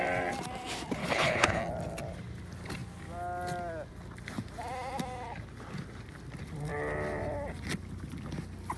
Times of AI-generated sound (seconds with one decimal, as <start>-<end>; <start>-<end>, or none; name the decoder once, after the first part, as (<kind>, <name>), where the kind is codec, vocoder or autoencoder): 1.0-1.6 (codec, HILCodec)